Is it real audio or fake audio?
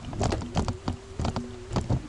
real